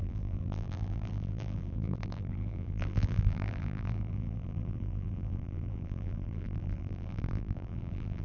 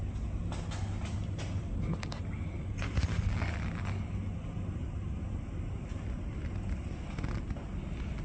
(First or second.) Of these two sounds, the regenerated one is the first